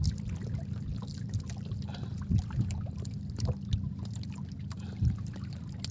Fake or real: real